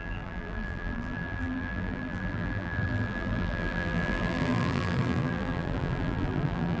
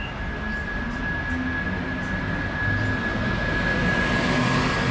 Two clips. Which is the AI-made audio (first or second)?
first